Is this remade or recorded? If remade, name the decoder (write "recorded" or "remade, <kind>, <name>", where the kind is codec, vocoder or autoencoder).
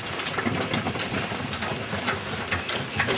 recorded